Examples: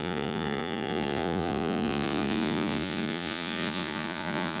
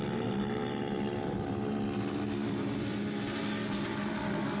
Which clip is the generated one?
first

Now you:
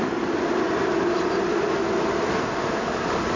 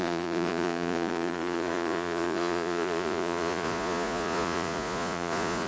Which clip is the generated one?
second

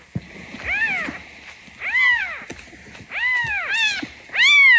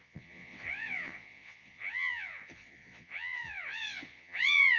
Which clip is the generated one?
second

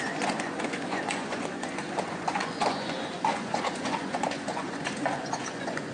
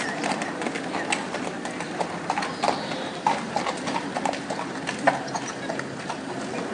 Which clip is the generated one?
first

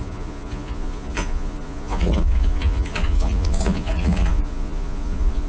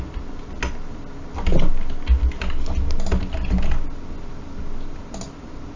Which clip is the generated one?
first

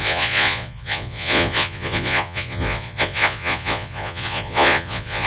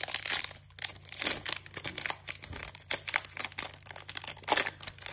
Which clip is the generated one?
first